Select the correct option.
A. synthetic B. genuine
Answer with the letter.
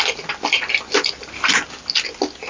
B